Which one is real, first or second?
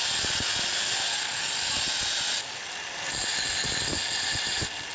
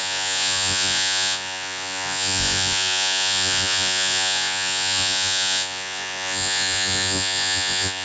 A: first